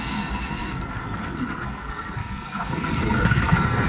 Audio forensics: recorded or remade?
remade